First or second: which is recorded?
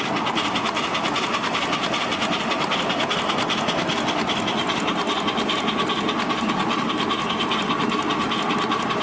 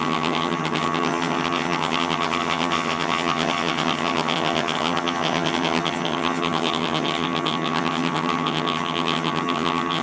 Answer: first